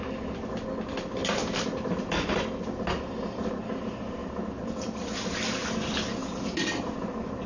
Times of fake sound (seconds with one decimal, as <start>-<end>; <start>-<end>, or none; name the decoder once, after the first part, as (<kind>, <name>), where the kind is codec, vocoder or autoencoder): 1.2-2.4 (vocoder, BigVGAN v2); 4.2-5.1